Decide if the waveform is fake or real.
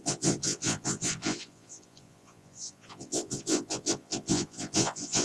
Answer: fake